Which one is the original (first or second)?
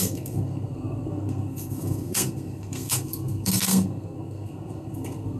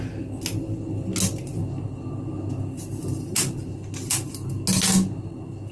second